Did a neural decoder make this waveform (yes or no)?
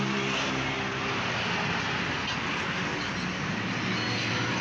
no